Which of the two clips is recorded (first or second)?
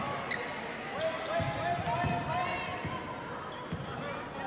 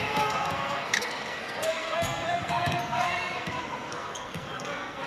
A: first